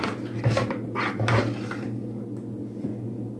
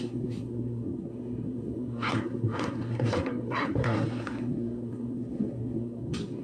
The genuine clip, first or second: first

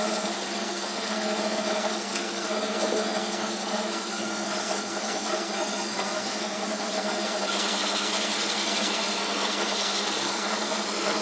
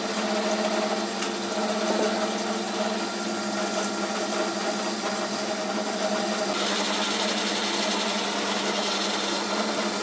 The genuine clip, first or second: second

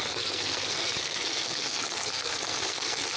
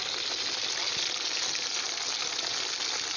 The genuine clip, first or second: second